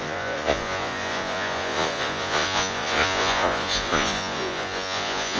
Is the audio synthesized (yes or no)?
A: yes